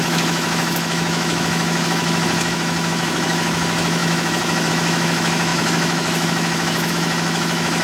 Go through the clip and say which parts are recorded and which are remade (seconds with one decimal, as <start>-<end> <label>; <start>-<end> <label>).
0.0-7.8 remade